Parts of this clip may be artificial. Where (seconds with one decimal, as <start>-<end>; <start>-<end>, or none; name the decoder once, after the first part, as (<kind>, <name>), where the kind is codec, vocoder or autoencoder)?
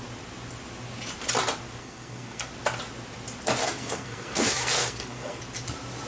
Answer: 1.8-2.5 (codec, SNAC); 3.6-5.4